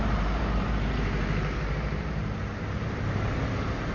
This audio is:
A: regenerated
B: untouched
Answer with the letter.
A